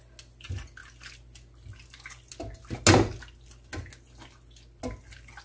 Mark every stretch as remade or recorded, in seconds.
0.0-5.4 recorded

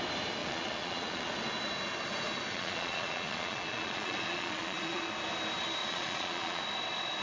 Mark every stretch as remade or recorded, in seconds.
0.0-0.4 recorded; 0.4-1.3 remade; 1.3-2.5 recorded; 2.5-5.1 remade; 5.1-5.8 recorded; 5.8-6.6 remade; 6.6-7.2 recorded

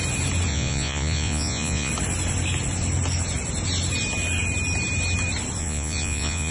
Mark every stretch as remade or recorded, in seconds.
0.0-0.5 recorded; 0.5-1.9 remade; 1.9-5.6 recorded; 5.6-6.5 remade

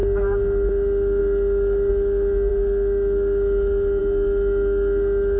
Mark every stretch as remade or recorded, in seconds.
0.0-5.4 recorded

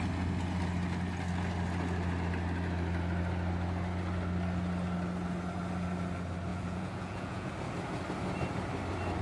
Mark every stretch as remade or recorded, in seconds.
0.0-6.5 recorded; 6.5-7.5 remade; 7.5-9.2 recorded